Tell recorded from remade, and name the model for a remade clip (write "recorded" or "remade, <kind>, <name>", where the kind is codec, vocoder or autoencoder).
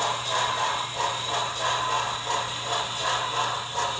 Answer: remade, vocoder, BigVGAN v2